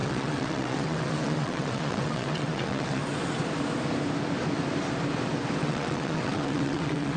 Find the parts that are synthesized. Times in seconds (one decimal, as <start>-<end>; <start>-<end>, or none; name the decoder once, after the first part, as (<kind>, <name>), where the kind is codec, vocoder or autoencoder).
0.0-3.0 (vocoder, WaveNeXt); 5.6-7.2